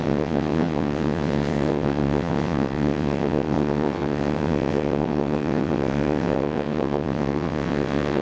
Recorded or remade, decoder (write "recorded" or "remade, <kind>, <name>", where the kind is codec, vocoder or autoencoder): remade, vocoder, WaveNeXt